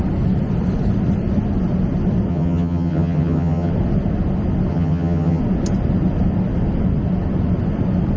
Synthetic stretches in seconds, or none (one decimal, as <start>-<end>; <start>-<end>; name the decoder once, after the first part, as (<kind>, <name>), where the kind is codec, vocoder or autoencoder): 2.3-3.7 (vocoder, HiFi-GAN); 4.7-5.4